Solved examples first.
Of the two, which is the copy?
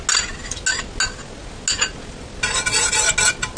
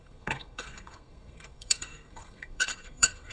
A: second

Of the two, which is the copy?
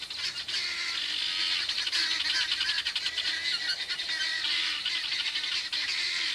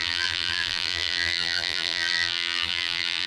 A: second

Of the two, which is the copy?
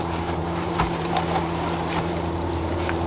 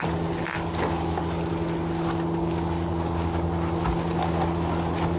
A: first